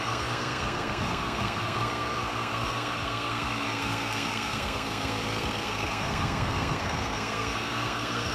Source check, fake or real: fake